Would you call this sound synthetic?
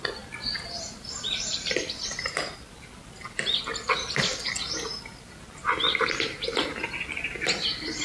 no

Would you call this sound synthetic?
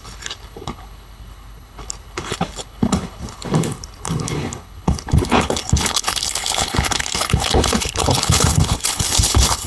yes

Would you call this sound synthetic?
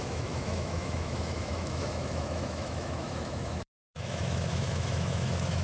yes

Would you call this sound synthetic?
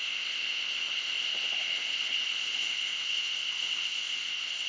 yes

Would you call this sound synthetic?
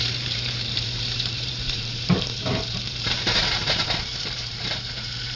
yes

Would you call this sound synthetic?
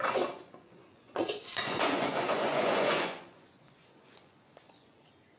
yes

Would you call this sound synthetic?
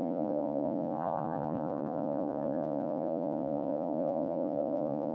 yes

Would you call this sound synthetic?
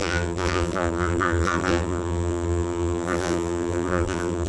yes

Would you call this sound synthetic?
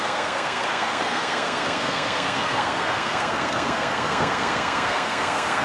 yes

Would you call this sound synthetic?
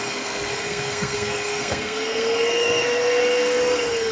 yes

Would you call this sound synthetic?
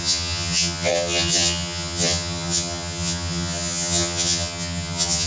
yes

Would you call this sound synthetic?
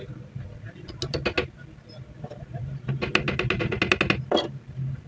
no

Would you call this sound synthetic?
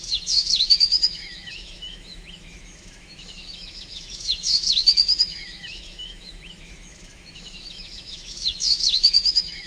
yes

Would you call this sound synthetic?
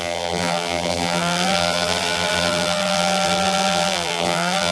yes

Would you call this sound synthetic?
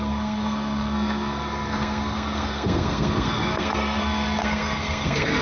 yes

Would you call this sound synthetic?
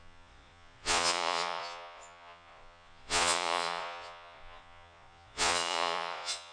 yes